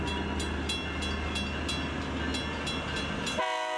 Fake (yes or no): no